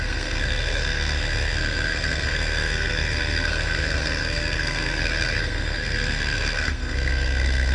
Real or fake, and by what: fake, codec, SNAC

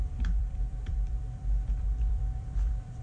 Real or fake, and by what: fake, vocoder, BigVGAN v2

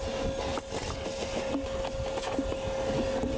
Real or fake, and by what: real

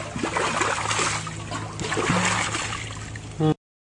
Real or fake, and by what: real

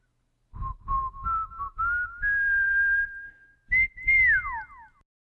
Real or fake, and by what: real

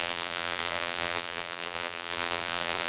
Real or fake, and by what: fake, vocoder, BigVGAN v2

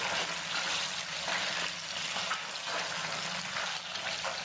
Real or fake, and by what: real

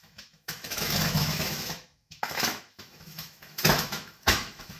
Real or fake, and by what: fake, autoencoder, DAC-VAE